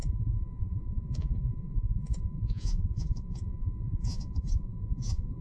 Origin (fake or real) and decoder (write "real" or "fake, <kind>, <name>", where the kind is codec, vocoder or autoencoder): fake, vocoder, Vocos